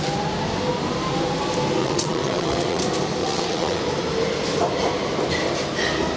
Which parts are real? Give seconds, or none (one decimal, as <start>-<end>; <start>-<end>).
0.0-1.8; 2.8-3.2; 3.8-6.2